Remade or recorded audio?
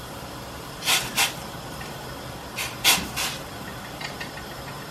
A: remade